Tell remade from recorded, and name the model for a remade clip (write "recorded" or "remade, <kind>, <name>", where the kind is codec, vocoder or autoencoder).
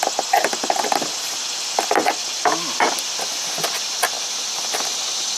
recorded